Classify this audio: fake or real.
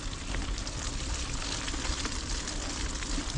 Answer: real